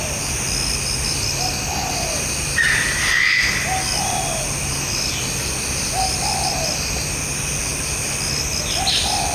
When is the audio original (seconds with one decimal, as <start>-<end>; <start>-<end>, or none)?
0.0-9.3